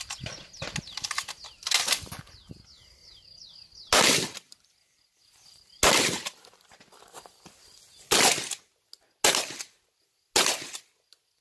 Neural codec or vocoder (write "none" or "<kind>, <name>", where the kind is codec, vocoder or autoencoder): none